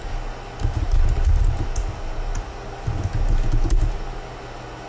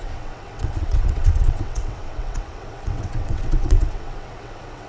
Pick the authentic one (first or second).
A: first